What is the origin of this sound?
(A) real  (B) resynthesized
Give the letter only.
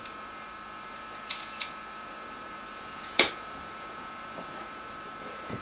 B